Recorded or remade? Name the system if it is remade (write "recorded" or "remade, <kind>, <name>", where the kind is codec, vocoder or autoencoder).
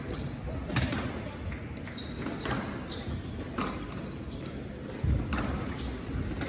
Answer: recorded